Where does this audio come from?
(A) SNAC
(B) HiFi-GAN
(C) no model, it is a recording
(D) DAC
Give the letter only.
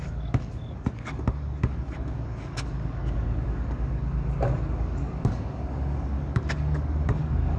D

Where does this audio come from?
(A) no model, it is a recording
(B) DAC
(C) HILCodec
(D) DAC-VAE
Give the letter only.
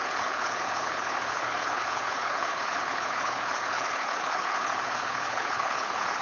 C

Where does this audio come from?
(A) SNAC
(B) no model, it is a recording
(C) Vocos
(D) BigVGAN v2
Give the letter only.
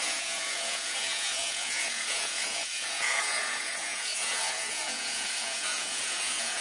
C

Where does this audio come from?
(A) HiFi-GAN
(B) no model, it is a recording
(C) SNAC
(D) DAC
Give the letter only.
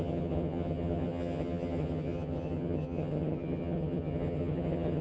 A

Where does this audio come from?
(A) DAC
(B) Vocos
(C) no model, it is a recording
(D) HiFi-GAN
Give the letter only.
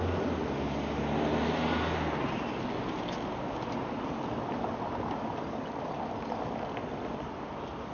C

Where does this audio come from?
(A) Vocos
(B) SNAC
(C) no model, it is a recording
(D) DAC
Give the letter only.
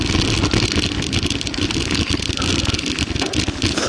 C